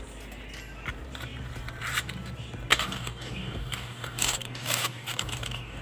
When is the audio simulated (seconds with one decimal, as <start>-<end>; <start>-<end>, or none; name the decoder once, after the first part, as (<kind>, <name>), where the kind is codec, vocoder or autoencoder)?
2.7-5.8 (codec, DAC)